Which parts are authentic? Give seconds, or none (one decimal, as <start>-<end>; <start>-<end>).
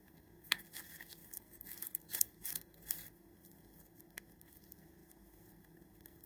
none